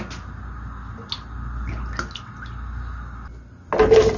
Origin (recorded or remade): recorded